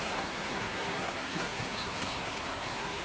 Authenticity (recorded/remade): remade